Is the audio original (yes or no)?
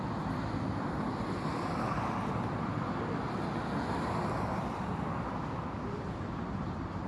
no